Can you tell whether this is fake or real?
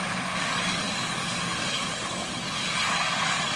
fake